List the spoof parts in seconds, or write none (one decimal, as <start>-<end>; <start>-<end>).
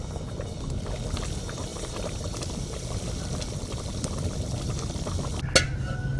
1.7-5.4